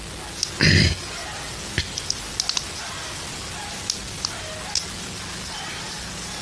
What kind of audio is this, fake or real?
real